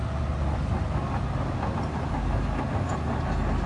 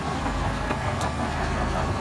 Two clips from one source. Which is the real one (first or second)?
first